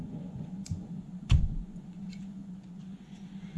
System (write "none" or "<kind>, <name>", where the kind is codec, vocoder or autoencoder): vocoder, Vocos